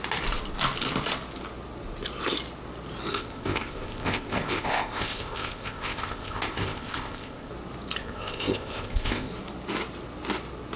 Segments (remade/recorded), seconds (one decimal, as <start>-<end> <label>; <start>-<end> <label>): 0.0-3.1 recorded; 3.1-7.5 remade; 7.5-8.0 recorded; 8.0-9.3 remade; 9.3-10.8 recorded